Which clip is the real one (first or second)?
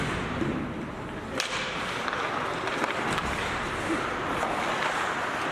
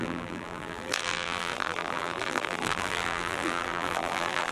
first